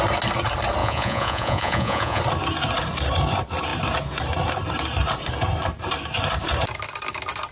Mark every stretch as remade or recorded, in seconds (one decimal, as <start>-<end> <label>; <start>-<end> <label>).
0.0-0.8 recorded; 0.8-2.2 remade; 2.2-7.5 recorded

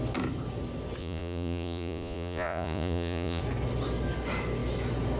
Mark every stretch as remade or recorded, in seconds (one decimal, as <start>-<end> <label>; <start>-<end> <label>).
0.0-1.0 recorded; 1.0-3.4 remade; 3.4-5.2 recorded

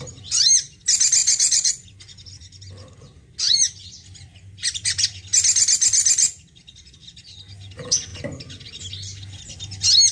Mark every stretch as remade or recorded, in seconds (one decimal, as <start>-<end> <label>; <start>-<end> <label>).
0.0-1.2 recorded; 1.2-1.7 remade; 1.7-10.1 recorded

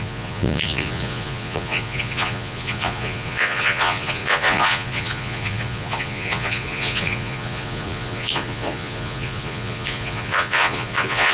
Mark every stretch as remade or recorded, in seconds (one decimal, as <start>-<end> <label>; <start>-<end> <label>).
0.0-11.3 remade

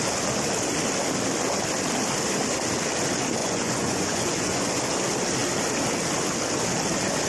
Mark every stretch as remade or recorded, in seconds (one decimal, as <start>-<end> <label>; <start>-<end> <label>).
0.0-3.4 recorded; 3.4-4.8 remade; 4.8-7.3 recorded